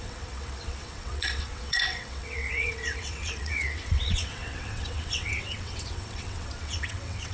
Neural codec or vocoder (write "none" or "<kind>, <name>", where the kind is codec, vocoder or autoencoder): vocoder, WaveNeXt